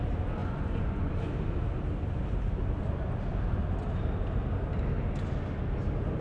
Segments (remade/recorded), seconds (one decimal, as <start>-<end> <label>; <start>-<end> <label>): 0.0-0.4 recorded; 0.4-1.1 remade; 1.1-6.2 recorded